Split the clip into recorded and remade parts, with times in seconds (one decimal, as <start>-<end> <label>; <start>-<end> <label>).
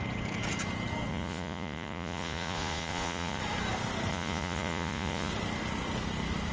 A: 0.0-1.1 recorded; 1.1-3.4 remade; 3.4-4.1 recorded; 4.1-5.3 remade; 5.3-6.5 recorded